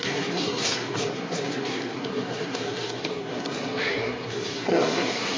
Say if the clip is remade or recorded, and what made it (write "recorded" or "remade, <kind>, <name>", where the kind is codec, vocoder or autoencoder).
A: remade, codec, SNAC